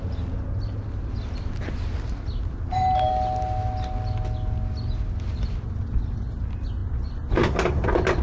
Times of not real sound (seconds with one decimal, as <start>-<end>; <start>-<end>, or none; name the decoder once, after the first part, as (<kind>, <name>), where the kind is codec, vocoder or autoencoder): none